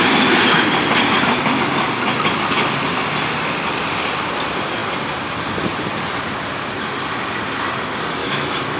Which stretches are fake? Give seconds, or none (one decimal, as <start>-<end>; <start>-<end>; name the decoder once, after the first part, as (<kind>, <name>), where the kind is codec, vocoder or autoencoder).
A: 8.2-8.8 (autoencoder, DAC-VAE)